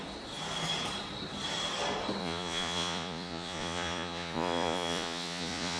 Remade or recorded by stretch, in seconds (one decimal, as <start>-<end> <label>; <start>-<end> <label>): 0.0-2.2 recorded; 2.2-5.8 remade

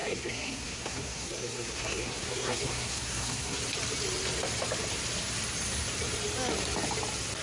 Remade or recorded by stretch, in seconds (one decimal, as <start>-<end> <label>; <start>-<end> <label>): 0.0-3.6 remade; 3.6-7.4 recorded

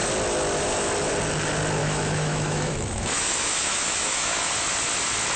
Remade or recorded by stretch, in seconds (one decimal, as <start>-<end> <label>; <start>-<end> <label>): 0.0-1.8 recorded; 1.8-4.5 remade; 4.5-5.4 recorded